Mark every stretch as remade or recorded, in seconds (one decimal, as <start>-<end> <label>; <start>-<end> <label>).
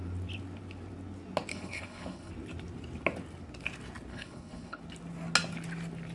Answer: 0.0-1.5 recorded; 1.5-2.3 remade; 2.3-4.1 recorded; 4.1-4.8 remade; 4.8-6.1 recorded